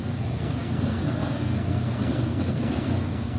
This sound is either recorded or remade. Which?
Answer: remade